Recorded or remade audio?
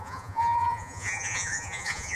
remade